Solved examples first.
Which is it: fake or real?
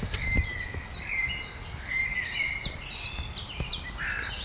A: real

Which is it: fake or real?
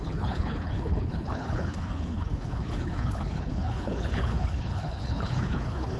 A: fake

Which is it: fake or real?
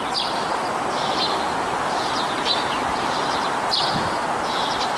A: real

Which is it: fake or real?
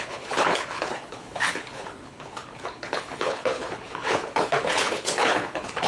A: fake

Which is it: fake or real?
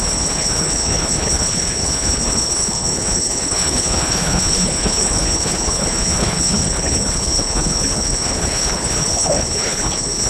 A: fake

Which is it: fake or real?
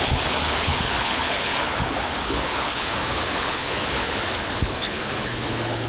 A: fake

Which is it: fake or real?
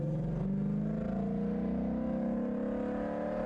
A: real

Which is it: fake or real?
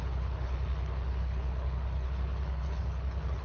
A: fake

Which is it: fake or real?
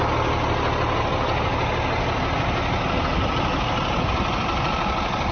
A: real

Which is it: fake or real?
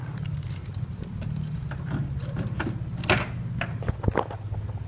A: real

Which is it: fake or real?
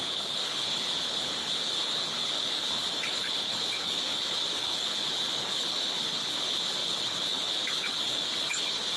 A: fake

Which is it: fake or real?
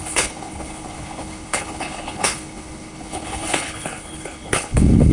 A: fake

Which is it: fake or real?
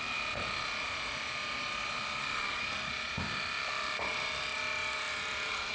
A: real